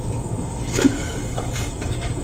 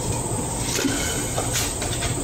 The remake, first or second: first